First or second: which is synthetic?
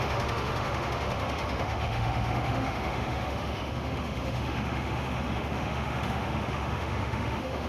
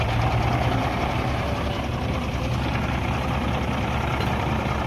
first